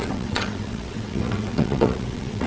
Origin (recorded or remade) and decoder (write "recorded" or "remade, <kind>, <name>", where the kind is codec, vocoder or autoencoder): remade, vocoder, WaveNeXt